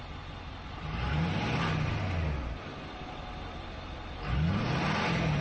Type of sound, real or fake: real